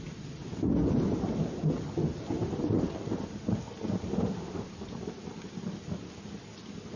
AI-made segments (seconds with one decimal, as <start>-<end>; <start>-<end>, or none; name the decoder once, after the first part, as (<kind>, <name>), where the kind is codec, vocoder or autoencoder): 4.1-4.7 (autoencoder, DAC-VAE)